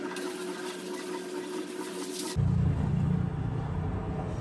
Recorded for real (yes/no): yes